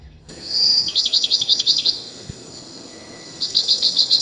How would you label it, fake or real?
fake